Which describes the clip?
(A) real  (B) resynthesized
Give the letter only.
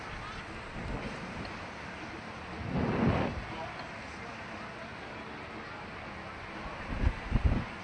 A